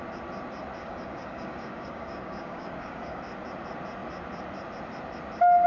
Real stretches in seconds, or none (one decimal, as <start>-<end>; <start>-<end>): 0.0-0.8; 3.2-5.7